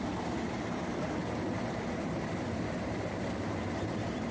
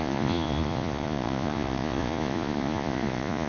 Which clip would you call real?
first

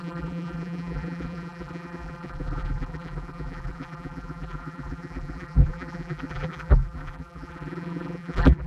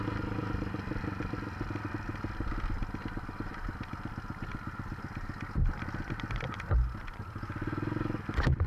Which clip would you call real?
second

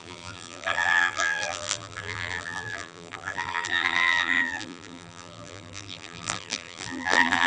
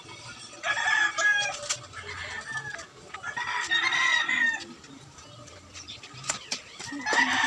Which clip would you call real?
second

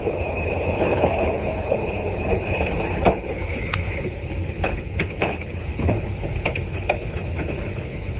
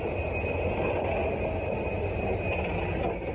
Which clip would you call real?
second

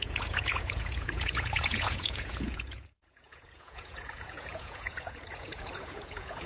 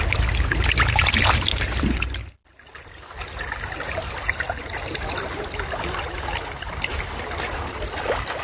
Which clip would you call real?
second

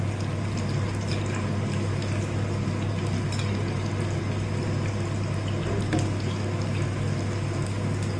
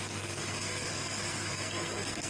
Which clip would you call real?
first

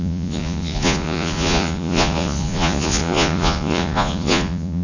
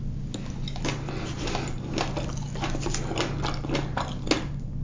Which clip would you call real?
second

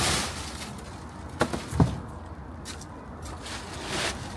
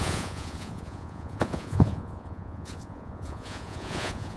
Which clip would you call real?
first